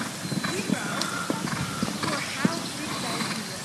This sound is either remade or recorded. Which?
recorded